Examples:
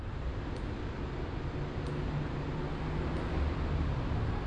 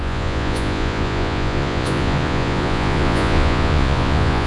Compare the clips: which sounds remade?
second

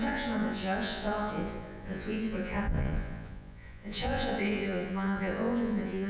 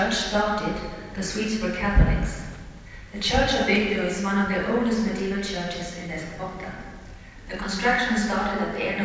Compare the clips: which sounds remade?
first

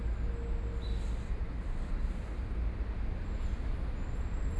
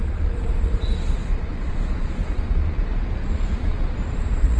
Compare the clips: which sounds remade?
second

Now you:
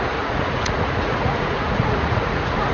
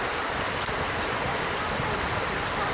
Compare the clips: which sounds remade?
first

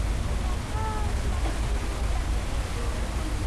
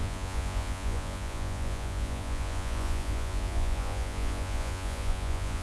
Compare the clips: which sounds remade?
second